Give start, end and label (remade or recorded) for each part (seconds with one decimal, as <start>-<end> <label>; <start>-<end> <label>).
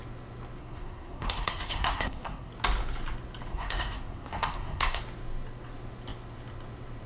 0.0-0.6 recorded; 0.6-2.5 remade; 2.5-3.5 recorded; 3.5-5.0 remade; 5.0-7.1 recorded